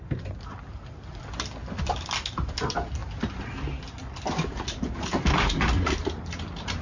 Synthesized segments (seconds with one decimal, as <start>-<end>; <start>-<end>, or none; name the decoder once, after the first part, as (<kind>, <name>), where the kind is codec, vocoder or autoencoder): none